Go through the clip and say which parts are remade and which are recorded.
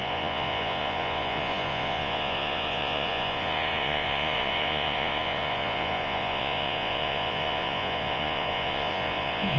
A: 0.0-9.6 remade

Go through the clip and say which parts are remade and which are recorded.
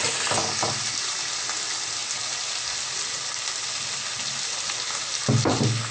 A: 0.0-5.9 recorded